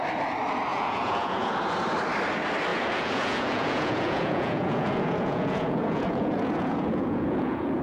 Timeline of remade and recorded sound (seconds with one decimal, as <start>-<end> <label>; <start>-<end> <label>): 0.0-0.7 recorded; 0.7-1.6 remade; 1.6-2.7 recorded; 2.7-7.8 remade